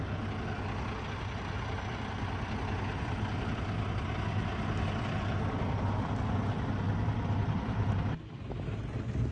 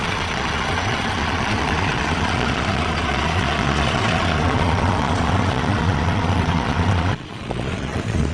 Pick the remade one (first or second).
second